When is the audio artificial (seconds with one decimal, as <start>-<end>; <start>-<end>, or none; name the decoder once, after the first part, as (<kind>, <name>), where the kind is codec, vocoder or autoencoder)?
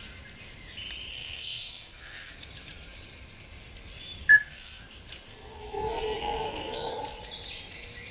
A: 1.1-2.3 (codec, SNAC); 4.3-4.8; 5.3-6.9